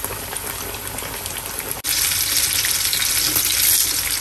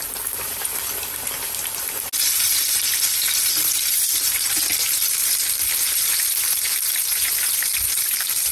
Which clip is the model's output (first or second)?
second